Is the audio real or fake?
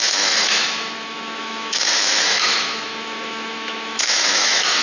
fake